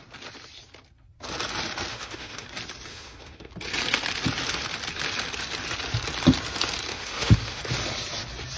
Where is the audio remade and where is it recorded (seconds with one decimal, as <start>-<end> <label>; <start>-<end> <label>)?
0.0-1.9 recorded; 1.9-2.5 remade; 2.5-2.9 recorded; 2.9-3.5 remade; 3.5-6.9 recorded; 6.9-7.6 remade; 7.6-8.6 recorded